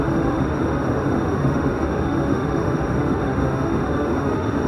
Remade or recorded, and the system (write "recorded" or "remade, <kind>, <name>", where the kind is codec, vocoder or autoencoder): remade, autoencoder, DAC-VAE